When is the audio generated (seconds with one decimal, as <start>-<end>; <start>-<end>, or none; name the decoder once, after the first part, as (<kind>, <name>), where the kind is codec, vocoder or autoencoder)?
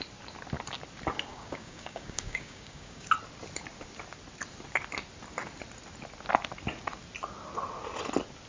1.3-3.1 (codec, DAC)